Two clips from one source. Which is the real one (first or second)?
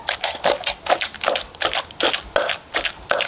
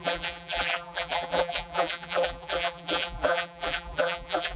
first